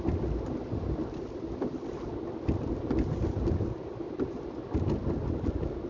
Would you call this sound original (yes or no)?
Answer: yes